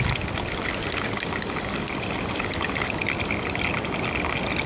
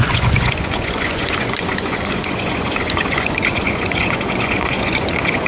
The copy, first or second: second